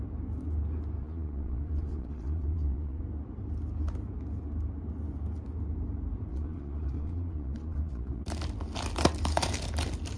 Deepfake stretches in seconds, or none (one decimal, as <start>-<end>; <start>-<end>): 1.0-3.0; 6.3-8.2